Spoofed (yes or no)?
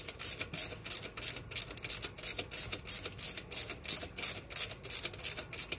no